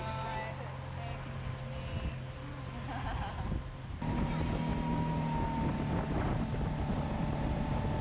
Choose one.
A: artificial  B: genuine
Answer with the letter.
B